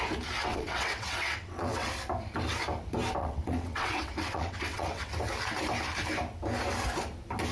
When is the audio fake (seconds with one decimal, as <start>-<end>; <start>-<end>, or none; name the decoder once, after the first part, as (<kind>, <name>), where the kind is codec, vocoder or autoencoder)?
0.5-1.9 (vocoder, WaveNeXt); 3.2-5.1